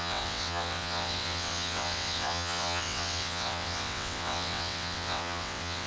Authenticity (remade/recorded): remade